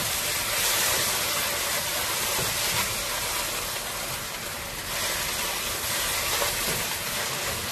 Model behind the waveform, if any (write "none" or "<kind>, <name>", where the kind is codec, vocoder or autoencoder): none